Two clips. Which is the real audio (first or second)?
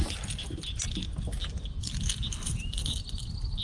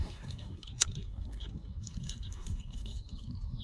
first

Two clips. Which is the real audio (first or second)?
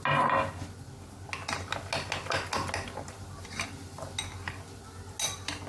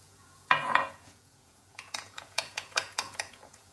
first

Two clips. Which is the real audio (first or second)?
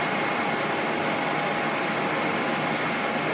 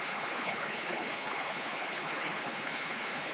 first